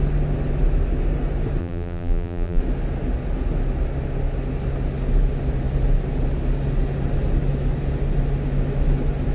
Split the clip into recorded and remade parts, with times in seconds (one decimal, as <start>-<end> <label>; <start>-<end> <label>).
0.0-1.6 recorded; 1.6-2.6 remade; 2.6-9.3 recorded